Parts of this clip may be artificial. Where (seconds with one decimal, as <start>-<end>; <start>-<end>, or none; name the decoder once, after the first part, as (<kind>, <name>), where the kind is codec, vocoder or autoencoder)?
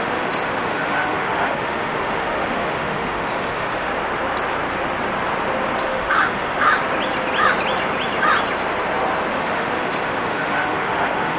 0.0-3.9 (autoencoder, DAC-VAE); 5.8-6.7; 9.3-11.4